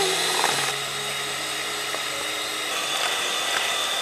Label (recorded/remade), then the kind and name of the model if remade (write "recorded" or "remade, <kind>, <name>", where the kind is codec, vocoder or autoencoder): recorded